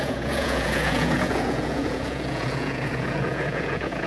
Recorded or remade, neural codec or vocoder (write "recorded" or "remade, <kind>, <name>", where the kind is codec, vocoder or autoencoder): remade, vocoder, Vocos